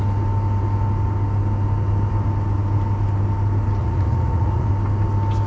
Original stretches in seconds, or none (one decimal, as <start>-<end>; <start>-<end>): 0.0-3.8; 4.7-5.5